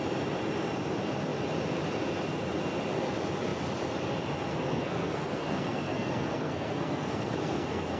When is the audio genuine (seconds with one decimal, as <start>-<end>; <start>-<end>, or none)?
0.0-4.5